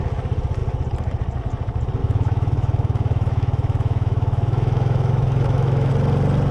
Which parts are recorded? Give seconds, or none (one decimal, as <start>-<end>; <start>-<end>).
0.0-2.0; 5.9-6.5